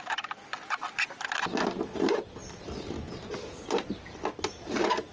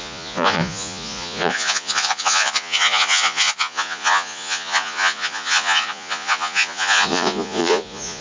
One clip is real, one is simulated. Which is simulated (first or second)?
second